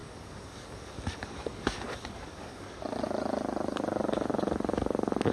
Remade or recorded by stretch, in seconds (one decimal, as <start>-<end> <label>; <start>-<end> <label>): 0.0-2.8 remade; 2.8-5.3 recorded

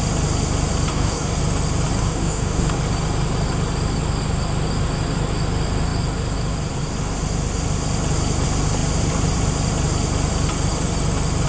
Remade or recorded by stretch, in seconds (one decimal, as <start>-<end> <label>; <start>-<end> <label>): 0.0-0.9 recorded; 0.9-1.4 remade; 1.4-2.0 recorded; 2.0-2.7 remade; 2.7-11.5 recorded

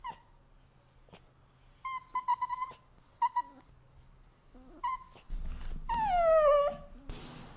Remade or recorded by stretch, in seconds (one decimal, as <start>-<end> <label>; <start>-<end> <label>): 0.0-7.6 recorded

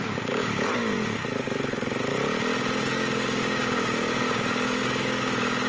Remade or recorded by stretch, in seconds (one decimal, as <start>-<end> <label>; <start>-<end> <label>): 0.0-0.8 remade; 0.8-2.8 recorded; 2.8-5.7 remade

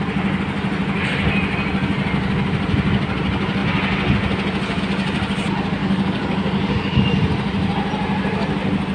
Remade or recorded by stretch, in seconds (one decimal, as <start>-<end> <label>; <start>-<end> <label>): 0.0-5.8 recorded; 5.8-7.0 remade; 7.0-8.9 recorded

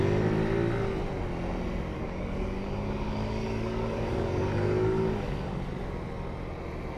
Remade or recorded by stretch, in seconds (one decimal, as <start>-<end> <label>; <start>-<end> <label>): 0.0-1.9 recorded; 1.9-5.6 remade; 5.6-7.0 recorded

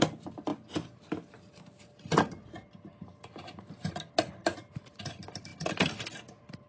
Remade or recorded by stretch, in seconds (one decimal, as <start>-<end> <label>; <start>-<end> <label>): 0.0-6.7 recorded

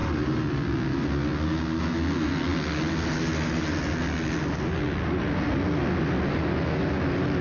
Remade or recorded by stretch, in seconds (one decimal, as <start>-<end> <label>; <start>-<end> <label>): 0.0-7.4 recorded